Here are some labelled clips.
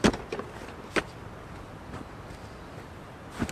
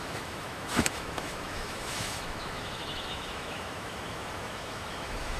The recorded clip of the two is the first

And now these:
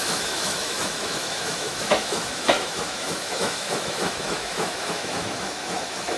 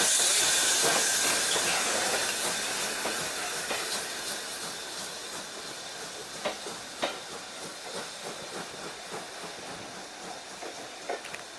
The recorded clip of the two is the second